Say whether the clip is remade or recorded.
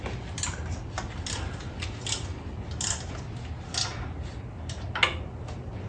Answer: recorded